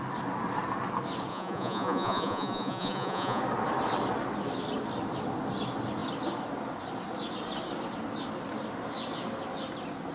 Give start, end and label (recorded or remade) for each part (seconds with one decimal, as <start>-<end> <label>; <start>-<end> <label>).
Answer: 0.0-1.3 recorded; 1.3-3.4 remade; 3.4-10.1 recorded